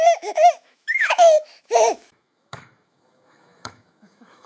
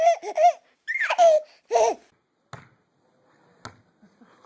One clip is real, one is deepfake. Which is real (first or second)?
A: second